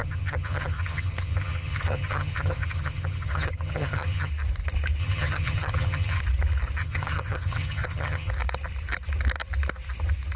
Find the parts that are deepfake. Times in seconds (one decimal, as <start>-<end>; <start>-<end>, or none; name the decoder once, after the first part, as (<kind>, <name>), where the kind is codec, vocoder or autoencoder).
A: 0.0-4.3 (vocoder, HiFi-GAN); 5.0-6.2; 6.8-8.3